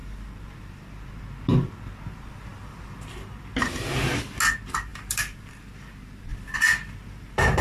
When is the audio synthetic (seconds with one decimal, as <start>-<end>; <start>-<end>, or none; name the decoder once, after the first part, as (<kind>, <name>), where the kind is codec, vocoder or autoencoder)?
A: 0.0-0.8 (vocoder, BigVGAN v2); 2.5-4.3; 4.9-5.6; 6.3-7.6